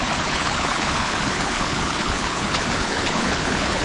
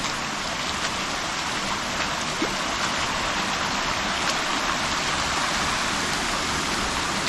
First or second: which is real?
second